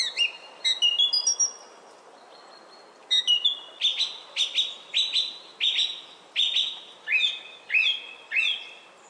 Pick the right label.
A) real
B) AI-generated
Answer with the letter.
A